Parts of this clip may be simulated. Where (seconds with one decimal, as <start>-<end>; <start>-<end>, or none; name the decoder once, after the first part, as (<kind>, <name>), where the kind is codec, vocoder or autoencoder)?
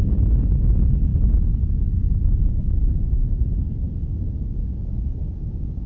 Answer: none